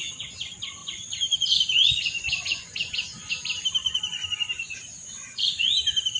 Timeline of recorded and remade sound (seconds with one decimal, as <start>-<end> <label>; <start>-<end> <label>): 0.0-0.8 recorded; 0.8-3.3 remade; 3.3-3.8 recorded; 3.8-5.7 remade; 5.7-6.2 recorded